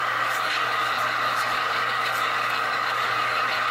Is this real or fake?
fake